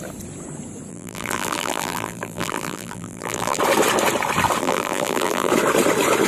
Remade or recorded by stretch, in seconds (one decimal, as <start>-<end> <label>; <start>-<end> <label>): 0.0-0.9 recorded; 0.9-3.6 remade; 3.6-4.6 recorded; 4.6-5.5 remade; 5.5-6.3 recorded